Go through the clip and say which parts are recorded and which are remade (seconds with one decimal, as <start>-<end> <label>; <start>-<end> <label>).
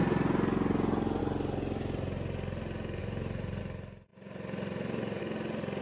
0.0-3.0 recorded; 3.0-3.6 remade; 3.6-4.1 recorded; 4.1-5.2 remade; 5.2-5.8 recorded